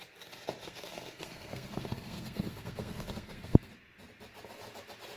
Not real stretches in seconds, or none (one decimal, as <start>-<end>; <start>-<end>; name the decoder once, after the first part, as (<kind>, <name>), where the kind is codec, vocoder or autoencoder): 0.6-3.7 (codec, SNAC)

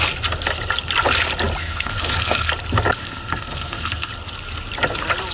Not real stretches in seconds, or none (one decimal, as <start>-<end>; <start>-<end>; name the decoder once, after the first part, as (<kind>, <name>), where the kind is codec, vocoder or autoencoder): 1.6-2.5 (codec, SNAC); 3.0-4.1

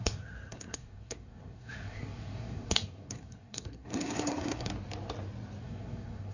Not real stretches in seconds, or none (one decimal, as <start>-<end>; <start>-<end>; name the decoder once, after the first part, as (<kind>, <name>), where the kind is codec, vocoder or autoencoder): 0.0-4.7 (codec, SNAC); 5.6-6.3

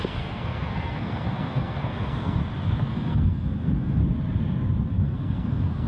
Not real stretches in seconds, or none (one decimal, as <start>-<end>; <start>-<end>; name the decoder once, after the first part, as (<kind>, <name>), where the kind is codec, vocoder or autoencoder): 0.0-2.4 (codec, SNAC); 2.9-4.0; 4.9-5.9